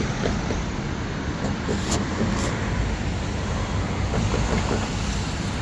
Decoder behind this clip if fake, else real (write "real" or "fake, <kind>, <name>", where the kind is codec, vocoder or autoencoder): real